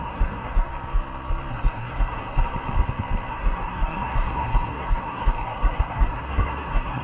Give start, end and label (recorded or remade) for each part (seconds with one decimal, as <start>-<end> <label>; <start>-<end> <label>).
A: 0.0-0.7 remade; 0.7-1.5 recorded; 1.5-2.4 remade; 2.4-3.3 recorded; 3.3-7.0 remade